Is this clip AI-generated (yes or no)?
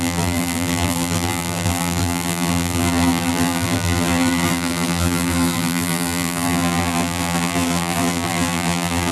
yes